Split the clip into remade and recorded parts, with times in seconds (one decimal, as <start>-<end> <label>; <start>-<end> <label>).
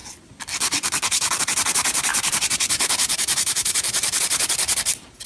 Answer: 0.0-2.1 recorded; 2.1-4.2 remade; 4.2-5.3 recorded